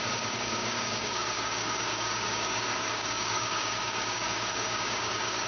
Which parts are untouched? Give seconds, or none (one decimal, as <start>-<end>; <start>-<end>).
none